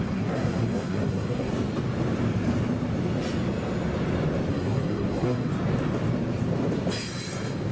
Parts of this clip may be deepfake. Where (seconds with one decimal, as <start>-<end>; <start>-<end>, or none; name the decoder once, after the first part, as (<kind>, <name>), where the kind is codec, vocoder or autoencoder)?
0.0-1.5 (codec, SNAC); 4.5-5.5